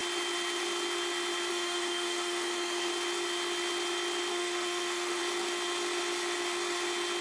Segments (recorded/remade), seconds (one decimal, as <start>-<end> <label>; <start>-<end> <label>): 0.0-1.5 recorded; 1.5-2.9 remade; 2.9-4.3 recorded; 4.3-5.2 remade; 5.2-7.2 recorded